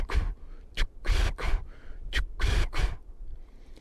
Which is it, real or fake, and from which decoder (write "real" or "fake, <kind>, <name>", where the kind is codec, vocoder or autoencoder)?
real